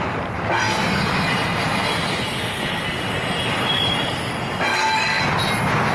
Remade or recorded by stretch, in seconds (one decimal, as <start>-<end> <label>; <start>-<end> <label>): 0.0-4.7 recorded; 4.7-5.2 remade; 5.2-5.9 recorded